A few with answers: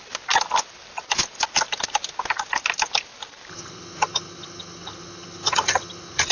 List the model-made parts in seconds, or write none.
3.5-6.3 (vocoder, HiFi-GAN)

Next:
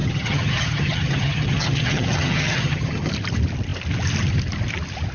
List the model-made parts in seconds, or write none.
0.0-3.1 (vocoder, HiFi-GAN)

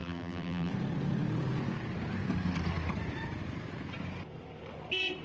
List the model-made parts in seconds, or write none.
0.0-0.7 (vocoder, BigVGAN v2)

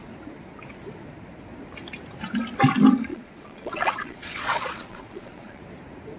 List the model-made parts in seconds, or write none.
3.1-5.6 (vocoder, Vocos)

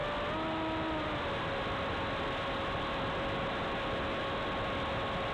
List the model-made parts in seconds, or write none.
none

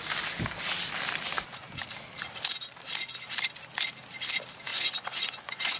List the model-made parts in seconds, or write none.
4.7-5.8 (vocoder, Vocos)